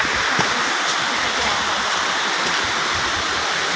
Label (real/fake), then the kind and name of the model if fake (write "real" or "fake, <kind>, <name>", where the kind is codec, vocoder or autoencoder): real